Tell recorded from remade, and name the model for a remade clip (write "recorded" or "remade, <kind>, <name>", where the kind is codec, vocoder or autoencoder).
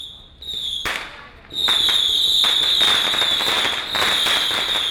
recorded